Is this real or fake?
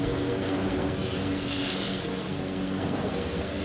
fake